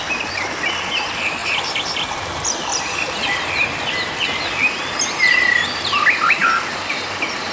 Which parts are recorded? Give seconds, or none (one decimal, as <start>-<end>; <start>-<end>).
0.0-1.4; 4.5-6.4; 6.9-7.5